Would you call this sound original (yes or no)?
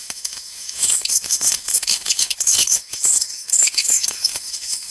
no